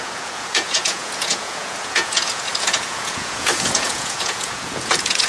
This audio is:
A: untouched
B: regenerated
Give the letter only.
B